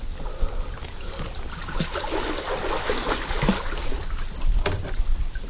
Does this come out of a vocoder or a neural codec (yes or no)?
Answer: no